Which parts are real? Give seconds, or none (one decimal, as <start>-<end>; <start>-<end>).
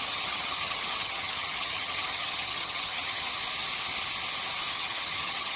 3.3-4.7